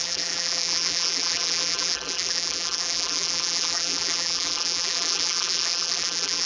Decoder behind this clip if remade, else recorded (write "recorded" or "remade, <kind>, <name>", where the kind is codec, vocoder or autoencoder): remade, vocoder, BigVGAN v2